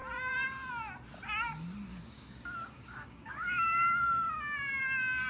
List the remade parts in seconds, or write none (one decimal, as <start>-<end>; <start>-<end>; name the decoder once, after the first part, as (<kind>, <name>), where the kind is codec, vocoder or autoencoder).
1.9-4.3 (codec, DAC)

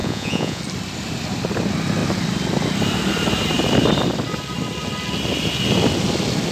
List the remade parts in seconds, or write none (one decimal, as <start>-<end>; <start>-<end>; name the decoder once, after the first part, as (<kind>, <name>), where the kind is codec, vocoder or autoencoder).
0.0-0.6 (vocoder, Vocos)